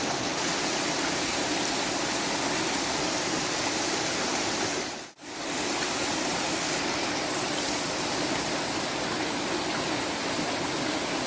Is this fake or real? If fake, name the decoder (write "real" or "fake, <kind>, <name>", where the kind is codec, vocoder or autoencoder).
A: real